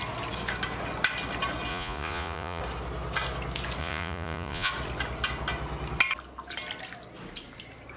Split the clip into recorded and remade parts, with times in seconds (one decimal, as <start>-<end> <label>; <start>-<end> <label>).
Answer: 0.0-1.7 recorded; 1.7-2.6 remade; 2.6-3.8 recorded; 3.8-4.7 remade; 4.7-8.0 recorded